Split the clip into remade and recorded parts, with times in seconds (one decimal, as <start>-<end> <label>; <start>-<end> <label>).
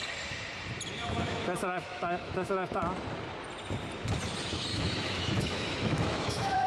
0.0-1.0 recorded; 1.0-2.8 remade; 2.8-4.7 recorded; 4.7-6.7 remade